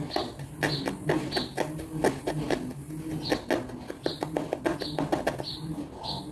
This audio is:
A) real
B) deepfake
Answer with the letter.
A